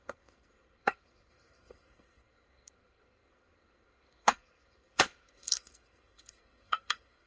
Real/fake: fake